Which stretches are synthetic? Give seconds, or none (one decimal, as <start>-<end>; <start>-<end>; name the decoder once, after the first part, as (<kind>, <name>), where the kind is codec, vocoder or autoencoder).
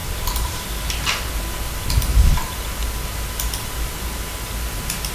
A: 0.0-0.6 (vocoder, BigVGAN v2)